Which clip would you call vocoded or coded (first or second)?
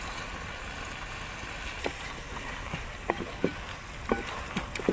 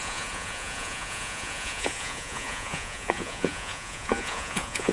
second